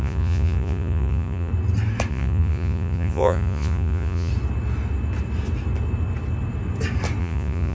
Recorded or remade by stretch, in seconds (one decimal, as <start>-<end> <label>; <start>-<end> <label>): 0.0-1.5 remade; 1.5-2.1 recorded; 2.1-4.3 remade; 4.3-7.2 recorded; 7.2-7.7 remade